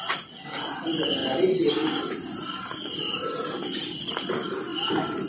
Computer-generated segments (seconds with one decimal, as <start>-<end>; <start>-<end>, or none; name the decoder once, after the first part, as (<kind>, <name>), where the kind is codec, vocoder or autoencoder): none